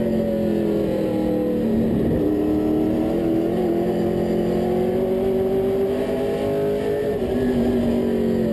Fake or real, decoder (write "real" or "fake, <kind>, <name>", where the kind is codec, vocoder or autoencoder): real